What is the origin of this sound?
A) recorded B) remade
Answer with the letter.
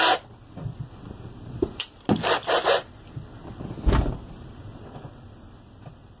A